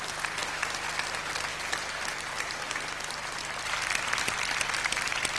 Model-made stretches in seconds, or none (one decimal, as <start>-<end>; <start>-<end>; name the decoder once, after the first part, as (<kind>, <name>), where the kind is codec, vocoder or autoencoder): none